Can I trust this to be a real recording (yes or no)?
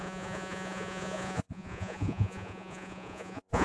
no